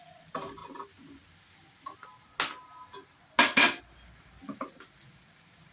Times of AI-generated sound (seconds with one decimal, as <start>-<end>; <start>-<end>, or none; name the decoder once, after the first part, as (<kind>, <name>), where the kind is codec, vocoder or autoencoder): none